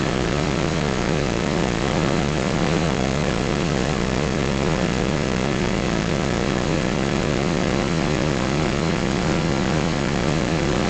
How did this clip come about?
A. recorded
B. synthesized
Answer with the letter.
B